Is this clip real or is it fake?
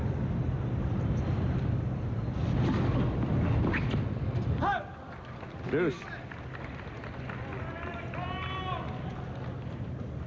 real